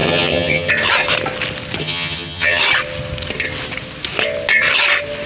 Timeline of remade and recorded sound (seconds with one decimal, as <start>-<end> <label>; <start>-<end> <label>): 0.0-0.7 remade; 0.7-1.8 recorded; 1.8-2.6 remade; 2.6-5.3 recorded